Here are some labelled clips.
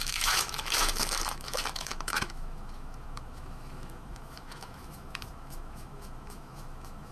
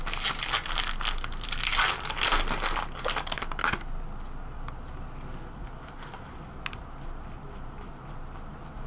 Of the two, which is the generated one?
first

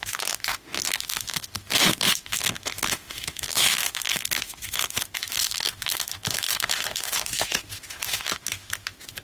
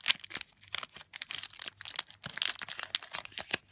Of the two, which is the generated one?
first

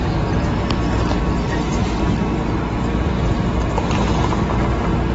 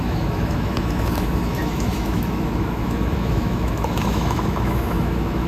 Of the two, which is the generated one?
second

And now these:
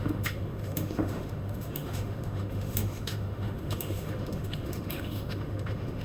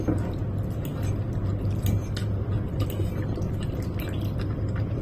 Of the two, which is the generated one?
first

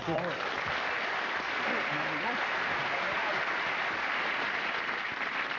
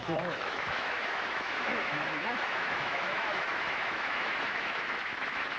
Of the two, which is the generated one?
second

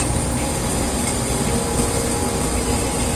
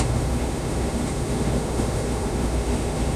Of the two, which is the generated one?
second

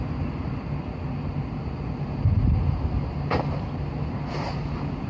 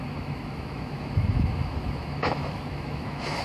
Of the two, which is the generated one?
second